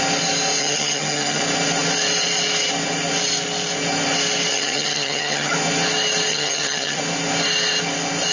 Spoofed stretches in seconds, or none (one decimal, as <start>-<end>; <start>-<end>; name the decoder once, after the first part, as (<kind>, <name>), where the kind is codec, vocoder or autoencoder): 0.6-1.4 (vocoder, HiFi-GAN); 4.5-5.5; 6.3-7.0